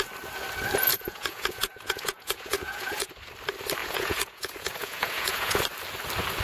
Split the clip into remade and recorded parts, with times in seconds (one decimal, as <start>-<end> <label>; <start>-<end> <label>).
0.0-0.9 recorded; 0.9-3.1 remade; 3.1-3.8 recorded; 3.8-5.6 remade; 5.6-6.4 recorded